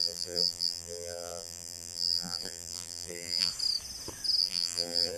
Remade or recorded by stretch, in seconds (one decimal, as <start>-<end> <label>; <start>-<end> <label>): 0.0-3.5 remade; 3.5-4.4 recorded; 4.4-5.2 remade